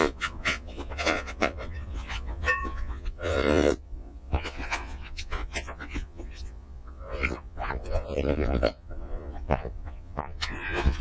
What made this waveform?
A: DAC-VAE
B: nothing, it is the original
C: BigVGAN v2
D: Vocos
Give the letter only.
D